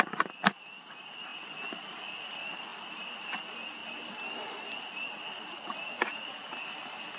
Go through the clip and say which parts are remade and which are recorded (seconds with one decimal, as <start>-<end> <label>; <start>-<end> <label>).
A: 0.0-7.2 recorded